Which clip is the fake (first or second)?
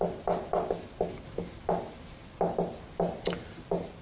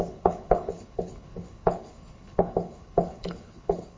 second